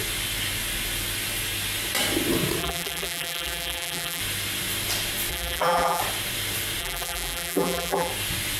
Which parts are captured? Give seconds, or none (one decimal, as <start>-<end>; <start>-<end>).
0.0-2.6; 4.2-5.3; 6.0-6.8; 8.1-8.6